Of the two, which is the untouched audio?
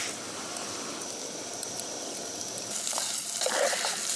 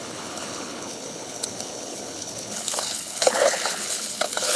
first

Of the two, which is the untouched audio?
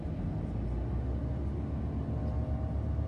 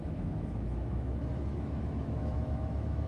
first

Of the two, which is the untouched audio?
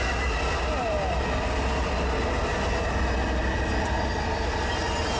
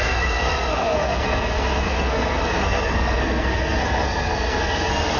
first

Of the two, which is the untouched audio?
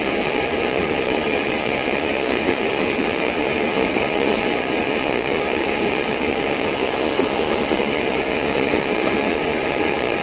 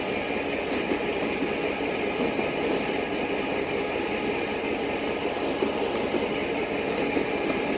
second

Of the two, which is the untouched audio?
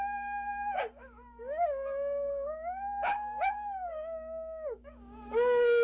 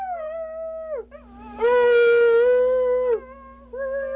second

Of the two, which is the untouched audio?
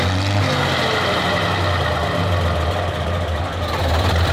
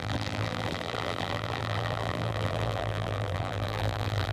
first